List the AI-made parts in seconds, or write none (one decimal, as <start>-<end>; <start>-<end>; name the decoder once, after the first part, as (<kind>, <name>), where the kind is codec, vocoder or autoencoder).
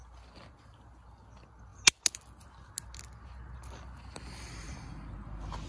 none